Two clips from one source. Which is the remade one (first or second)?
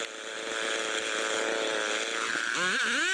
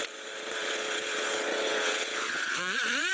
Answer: second